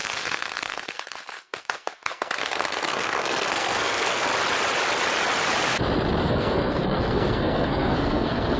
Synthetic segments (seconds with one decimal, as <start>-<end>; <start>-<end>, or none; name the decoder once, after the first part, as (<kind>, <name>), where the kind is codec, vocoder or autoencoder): 0.0-4.3 (codec, SNAC); 6.2-8.6